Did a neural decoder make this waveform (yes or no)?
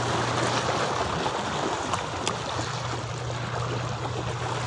no